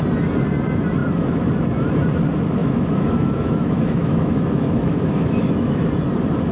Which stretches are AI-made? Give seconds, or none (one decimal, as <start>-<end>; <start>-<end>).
2.6-5.9